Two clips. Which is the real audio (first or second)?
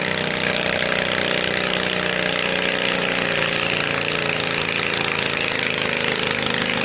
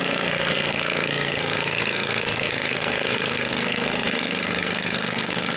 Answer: first